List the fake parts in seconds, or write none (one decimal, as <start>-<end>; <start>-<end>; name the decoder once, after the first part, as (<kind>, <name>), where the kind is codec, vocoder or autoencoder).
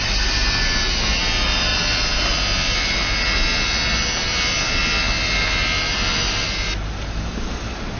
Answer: none